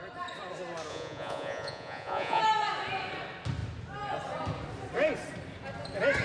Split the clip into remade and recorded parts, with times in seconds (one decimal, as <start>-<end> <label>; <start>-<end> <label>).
0.0-0.9 recorded; 0.9-2.4 remade; 2.4-6.2 recorded